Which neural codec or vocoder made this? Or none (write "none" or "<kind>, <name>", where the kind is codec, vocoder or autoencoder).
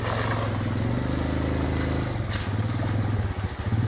none